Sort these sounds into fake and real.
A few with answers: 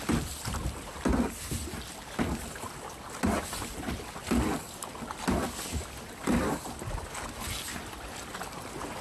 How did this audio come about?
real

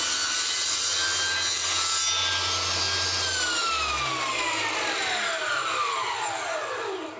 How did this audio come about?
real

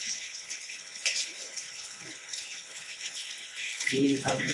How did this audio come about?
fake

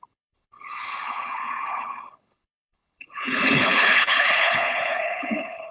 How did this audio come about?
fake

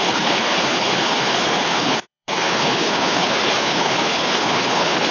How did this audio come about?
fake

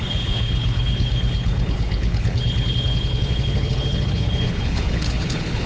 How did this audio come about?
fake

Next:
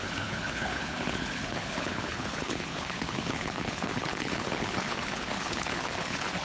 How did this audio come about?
fake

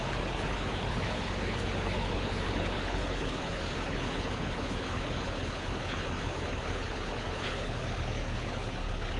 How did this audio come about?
fake